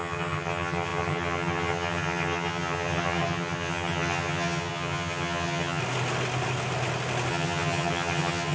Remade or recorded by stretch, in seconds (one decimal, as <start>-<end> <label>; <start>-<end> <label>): 0.0-5.8 remade; 5.8-7.3 recorded; 7.3-8.5 remade